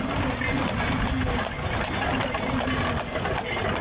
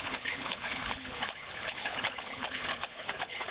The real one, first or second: first